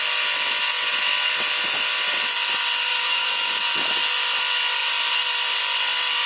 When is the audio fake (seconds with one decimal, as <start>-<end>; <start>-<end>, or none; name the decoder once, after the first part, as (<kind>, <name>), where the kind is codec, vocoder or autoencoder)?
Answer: 2.9-3.6 (codec, DAC)